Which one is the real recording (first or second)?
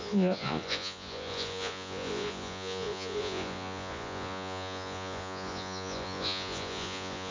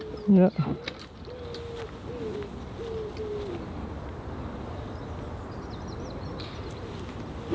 second